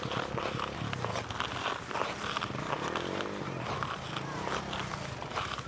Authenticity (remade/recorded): recorded